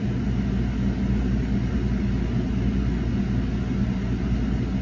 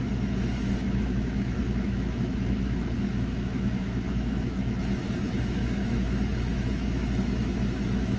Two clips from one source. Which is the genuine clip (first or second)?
first